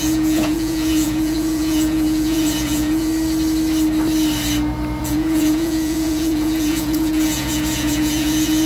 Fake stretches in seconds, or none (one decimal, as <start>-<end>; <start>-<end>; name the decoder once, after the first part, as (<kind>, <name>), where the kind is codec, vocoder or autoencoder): 0.0-3.1 (vocoder, Vocos); 5.0-8.7